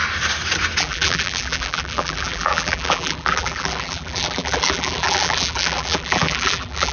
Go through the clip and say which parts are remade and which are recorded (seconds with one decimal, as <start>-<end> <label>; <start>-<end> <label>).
0.0-0.8 recorded; 0.8-6.9 remade